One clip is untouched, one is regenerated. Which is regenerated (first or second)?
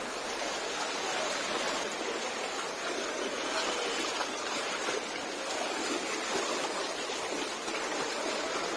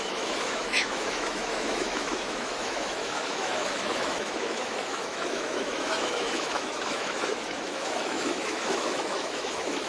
second